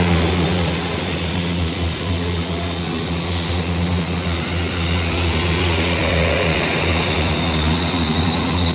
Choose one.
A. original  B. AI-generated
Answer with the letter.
B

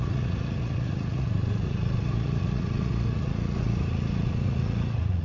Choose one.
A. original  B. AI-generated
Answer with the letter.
B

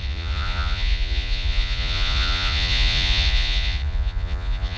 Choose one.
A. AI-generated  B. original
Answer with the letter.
A